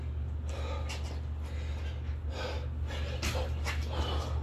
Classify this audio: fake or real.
real